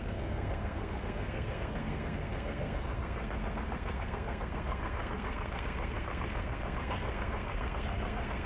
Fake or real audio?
fake